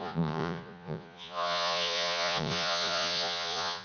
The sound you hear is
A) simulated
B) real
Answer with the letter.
A